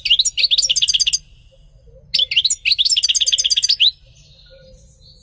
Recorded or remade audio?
recorded